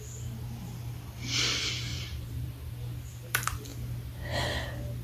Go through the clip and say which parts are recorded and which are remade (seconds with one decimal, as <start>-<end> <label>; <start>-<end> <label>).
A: 0.0-1.9 recorded; 1.9-2.7 remade; 2.7-5.0 recorded